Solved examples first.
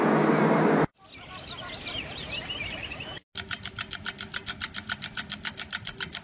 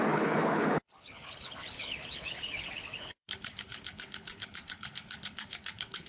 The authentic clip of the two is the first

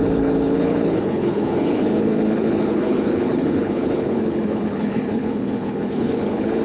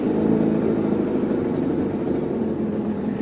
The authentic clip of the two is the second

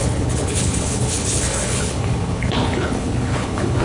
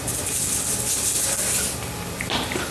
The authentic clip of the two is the second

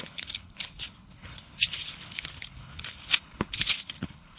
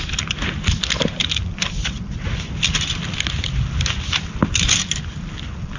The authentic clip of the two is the second